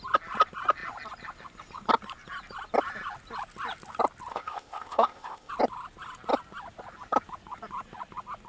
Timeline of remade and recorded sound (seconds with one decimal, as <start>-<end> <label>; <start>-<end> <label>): 0.0-4.3 recorded; 4.3-5.5 remade; 5.5-8.5 recorded